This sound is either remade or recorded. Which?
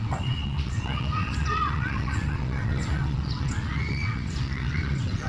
remade